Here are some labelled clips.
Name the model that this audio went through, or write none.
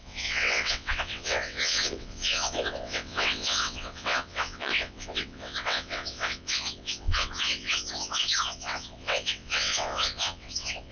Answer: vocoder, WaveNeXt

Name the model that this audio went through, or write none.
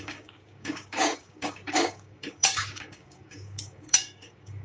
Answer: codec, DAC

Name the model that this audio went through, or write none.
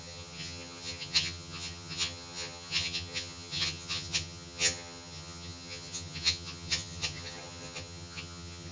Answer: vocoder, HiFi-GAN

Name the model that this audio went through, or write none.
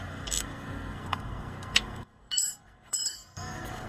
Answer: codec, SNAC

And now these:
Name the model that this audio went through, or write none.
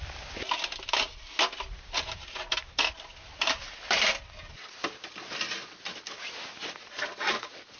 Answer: none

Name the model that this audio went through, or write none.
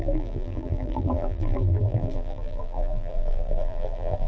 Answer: vocoder, BigVGAN v2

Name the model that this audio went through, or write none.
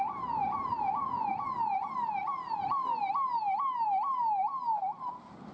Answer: none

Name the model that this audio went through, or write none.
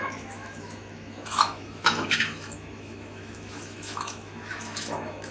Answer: autoencoder, DAC-VAE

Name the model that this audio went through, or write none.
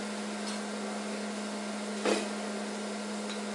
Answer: none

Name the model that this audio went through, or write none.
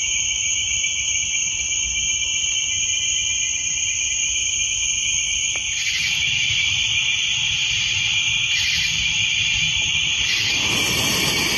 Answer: none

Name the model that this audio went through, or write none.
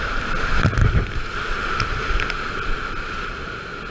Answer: none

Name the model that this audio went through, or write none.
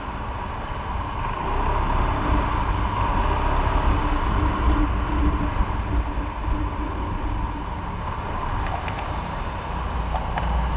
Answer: none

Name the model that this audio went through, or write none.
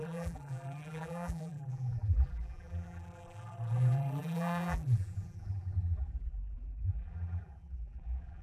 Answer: vocoder, BigVGAN v2